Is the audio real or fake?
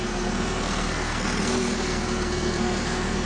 fake